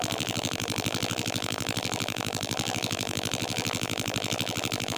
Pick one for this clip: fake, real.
fake